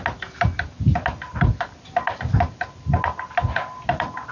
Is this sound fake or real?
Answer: real